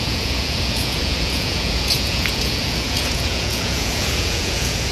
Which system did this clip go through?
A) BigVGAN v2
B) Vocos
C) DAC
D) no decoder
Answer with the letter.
B